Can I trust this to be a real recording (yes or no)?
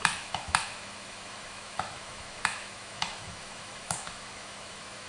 no